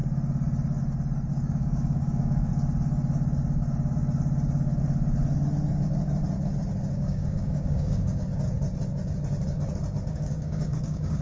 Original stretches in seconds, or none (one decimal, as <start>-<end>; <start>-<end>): 0.0-1.3; 2.5-6.9; 8.3-10.1